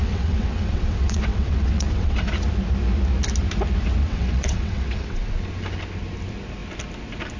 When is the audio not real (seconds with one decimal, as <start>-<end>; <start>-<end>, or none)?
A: 0.0-2.3; 4.0-5.4